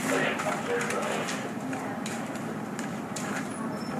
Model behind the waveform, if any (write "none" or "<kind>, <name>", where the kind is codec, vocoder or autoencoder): none